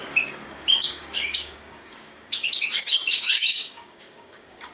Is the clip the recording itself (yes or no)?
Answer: no